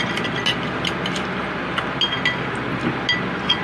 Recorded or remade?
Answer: recorded